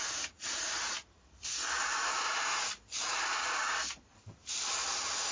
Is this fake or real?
fake